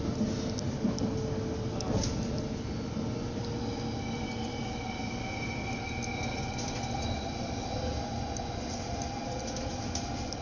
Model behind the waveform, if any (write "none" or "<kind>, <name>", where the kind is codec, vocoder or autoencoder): none